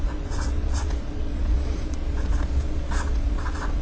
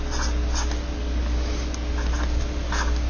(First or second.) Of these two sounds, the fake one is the first